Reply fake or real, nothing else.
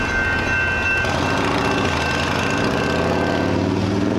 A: real